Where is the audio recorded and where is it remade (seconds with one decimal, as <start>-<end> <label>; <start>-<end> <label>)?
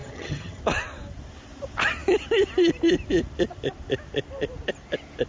0.0-0.6 remade; 0.6-5.3 recorded